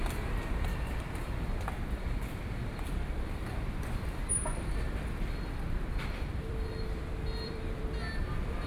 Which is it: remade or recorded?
remade